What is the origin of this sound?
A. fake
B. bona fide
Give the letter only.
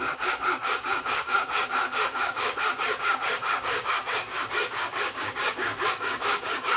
A